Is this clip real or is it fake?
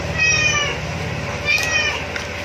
real